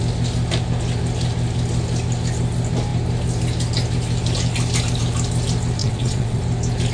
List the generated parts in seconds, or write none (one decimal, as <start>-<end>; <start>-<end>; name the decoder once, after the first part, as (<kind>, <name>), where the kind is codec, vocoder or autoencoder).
5.8-6.4 (vocoder, WaveNeXt)